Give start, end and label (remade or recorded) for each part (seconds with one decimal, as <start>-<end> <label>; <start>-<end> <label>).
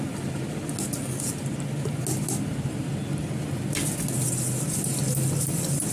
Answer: 0.0-5.9 recorded